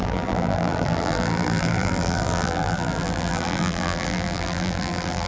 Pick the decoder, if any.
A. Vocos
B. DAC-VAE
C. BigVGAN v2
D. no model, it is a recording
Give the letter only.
C